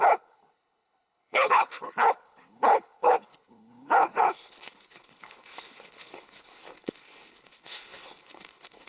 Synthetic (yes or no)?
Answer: yes